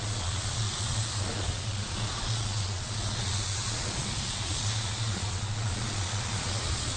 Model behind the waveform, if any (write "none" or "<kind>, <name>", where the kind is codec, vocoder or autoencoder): vocoder, Vocos